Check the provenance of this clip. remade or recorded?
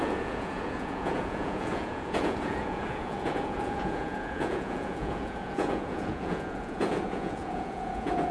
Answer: remade